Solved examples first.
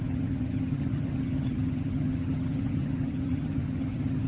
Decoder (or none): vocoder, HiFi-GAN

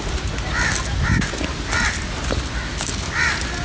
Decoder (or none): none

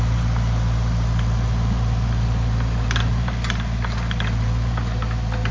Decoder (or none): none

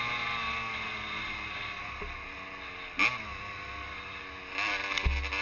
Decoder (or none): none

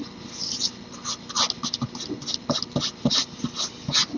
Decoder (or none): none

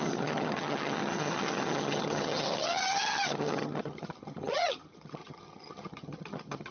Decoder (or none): vocoder, HiFi-GAN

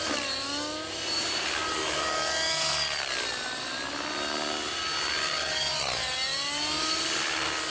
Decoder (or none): none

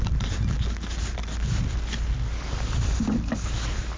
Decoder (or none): none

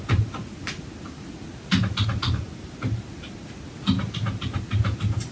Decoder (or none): none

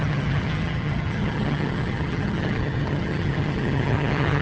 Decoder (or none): vocoder, HiFi-GAN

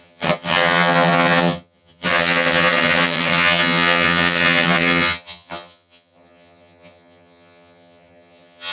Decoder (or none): vocoder, HiFi-GAN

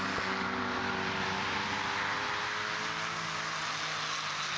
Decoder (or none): none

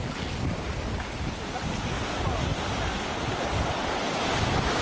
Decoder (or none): none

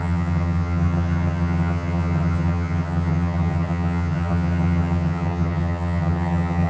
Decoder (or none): vocoder, HiFi-GAN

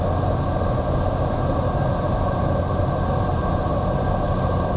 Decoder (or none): none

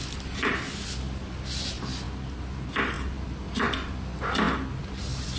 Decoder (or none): none